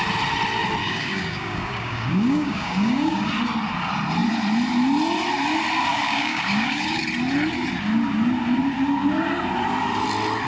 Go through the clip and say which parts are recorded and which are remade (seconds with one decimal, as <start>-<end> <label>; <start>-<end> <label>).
0.0-0.8 recorded; 0.8-3.3 remade; 3.3-5.9 recorded; 5.9-7.0 remade; 7.0-10.5 recorded